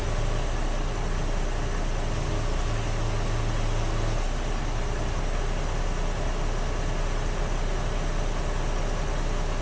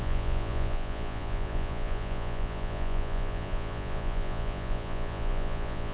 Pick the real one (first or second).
first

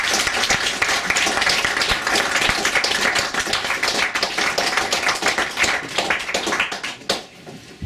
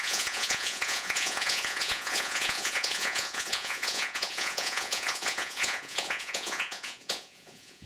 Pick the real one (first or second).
first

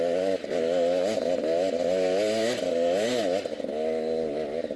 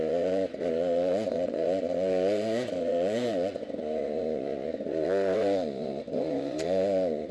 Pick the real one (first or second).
first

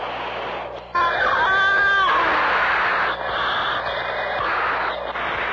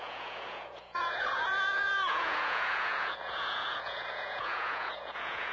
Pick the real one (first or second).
first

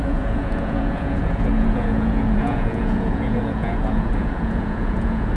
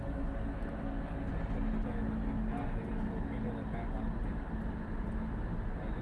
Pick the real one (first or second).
second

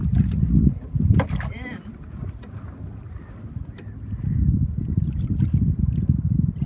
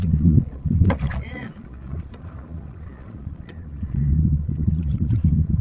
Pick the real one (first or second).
first